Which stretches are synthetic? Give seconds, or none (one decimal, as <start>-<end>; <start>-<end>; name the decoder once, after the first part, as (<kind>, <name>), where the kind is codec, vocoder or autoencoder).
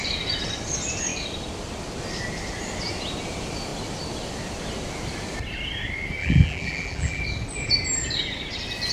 6.2-7.2 (vocoder, BigVGAN v2)